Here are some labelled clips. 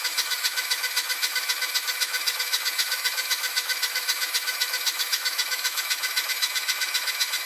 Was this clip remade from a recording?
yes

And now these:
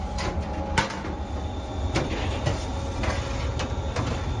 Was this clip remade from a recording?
no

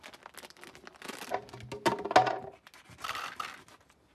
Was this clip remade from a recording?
no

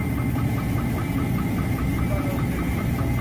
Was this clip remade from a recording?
no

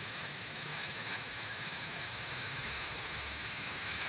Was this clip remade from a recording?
yes